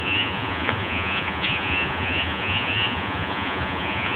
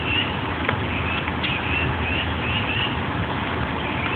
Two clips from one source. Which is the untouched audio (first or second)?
second